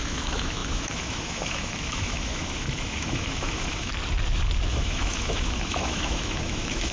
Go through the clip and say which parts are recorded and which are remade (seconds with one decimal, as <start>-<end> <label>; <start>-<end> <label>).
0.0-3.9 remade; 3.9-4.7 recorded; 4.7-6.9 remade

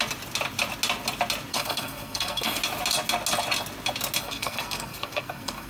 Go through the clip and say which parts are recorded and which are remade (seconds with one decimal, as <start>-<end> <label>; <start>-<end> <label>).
0.0-1.5 recorded; 1.5-2.6 remade; 2.6-4.2 recorded; 4.2-5.7 remade

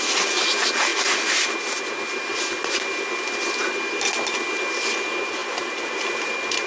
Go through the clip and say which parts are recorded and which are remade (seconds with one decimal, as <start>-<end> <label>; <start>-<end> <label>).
0.0-0.9 recorded; 0.9-1.5 remade; 1.5-5.4 recorded; 5.4-6.3 remade; 6.3-6.7 recorded

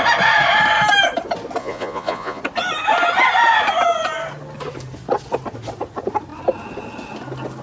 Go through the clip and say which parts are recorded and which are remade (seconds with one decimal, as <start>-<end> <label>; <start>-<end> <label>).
0.0-1.6 recorded; 1.6-2.4 remade; 2.4-7.6 recorded